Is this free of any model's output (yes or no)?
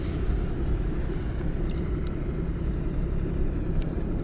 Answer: yes